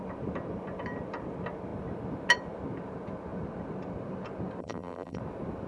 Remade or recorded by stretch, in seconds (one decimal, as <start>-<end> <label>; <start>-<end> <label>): 0.0-4.6 recorded; 4.6-5.2 remade; 5.2-5.7 recorded